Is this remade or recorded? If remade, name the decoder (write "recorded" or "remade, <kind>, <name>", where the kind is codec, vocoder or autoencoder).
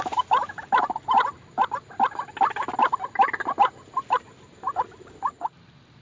recorded